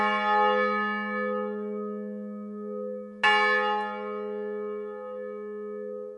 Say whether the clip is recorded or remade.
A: recorded